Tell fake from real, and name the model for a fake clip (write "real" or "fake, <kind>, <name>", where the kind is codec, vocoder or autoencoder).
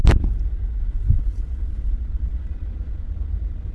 real